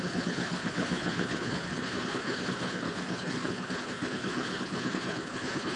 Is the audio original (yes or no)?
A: no